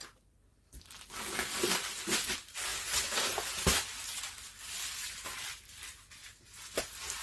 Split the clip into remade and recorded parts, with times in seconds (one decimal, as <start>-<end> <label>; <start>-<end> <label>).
0.0-7.2 recorded